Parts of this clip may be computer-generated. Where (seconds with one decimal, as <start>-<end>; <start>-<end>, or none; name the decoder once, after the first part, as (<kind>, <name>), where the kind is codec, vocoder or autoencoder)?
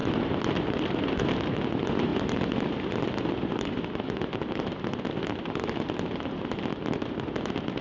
none